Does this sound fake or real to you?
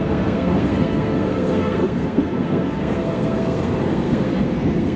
fake